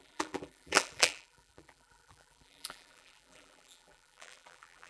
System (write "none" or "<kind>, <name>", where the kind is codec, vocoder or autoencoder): vocoder, BigVGAN v2